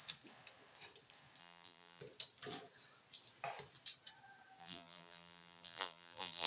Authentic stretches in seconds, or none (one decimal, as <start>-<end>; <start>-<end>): 0.0-1.4; 2.0-4.6